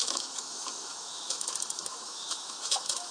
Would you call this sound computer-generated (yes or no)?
yes